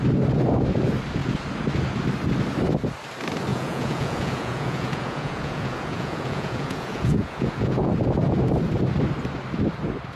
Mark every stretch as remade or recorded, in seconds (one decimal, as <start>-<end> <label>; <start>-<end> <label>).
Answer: 0.0-3.5 recorded; 3.5-7.9 remade; 7.9-10.2 recorded

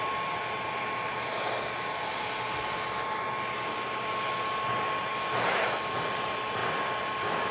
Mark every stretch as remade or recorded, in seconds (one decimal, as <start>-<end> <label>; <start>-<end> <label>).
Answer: 0.0-7.5 recorded

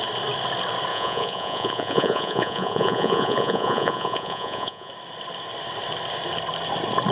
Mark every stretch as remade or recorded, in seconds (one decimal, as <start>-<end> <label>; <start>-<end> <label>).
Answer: 0.0-0.9 recorded; 0.9-4.9 remade; 4.9-7.1 recorded

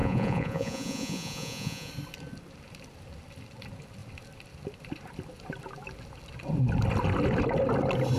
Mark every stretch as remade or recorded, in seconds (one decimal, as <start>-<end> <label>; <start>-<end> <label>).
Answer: 0.0-1.9 remade; 1.9-8.2 recorded

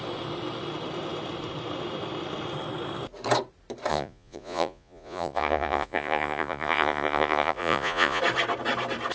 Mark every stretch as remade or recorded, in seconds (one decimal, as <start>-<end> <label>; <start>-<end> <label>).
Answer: 0.0-3.9 recorded; 3.9-8.2 remade; 8.2-9.1 recorded

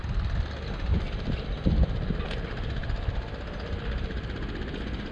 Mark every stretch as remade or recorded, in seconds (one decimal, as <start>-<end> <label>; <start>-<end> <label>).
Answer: 0.0-5.1 recorded